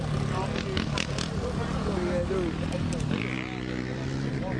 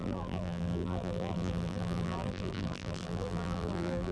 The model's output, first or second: second